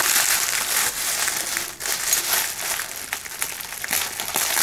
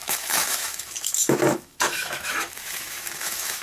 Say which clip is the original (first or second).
first